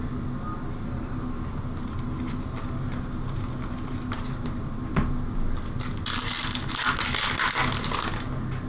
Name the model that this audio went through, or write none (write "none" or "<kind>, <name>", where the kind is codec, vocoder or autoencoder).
none